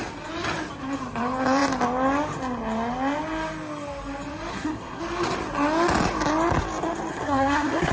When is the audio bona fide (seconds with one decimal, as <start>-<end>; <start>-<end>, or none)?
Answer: 0.0-4.5; 5.0-7.1